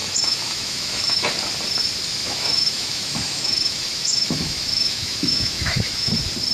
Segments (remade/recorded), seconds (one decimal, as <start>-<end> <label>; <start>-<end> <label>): 0.0-1.2 remade; 1.2-2.2 recorded; 2.2-6.1 remade; 6.1-6.5 recorded